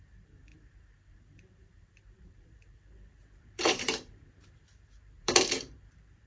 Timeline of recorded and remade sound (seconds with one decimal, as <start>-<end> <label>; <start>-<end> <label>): 0.0-6.3 remade